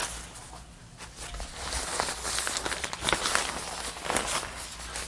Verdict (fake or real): real